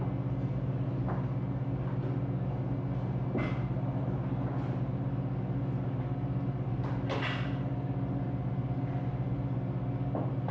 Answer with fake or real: real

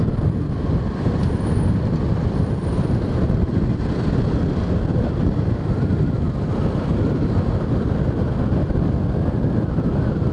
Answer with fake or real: real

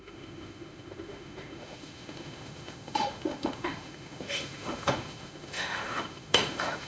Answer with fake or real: fake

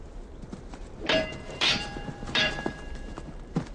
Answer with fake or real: fake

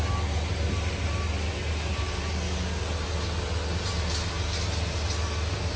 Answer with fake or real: real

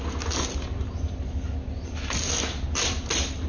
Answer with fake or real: real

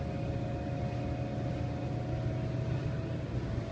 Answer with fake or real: real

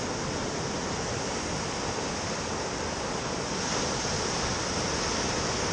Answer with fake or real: real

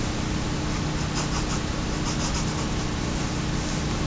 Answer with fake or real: real